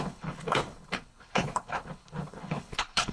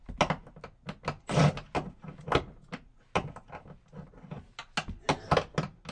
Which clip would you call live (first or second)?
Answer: second